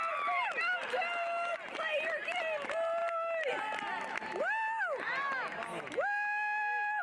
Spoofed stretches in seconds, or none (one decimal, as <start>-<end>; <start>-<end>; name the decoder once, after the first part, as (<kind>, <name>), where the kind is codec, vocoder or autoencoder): none